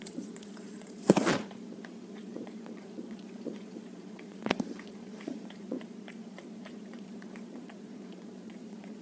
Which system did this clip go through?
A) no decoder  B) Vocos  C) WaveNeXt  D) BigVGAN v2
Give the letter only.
B